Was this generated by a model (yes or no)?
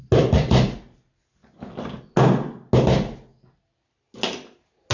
no